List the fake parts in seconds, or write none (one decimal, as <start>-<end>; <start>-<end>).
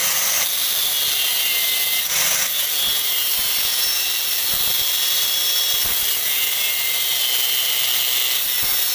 0.0-0.9; 3.9-6.1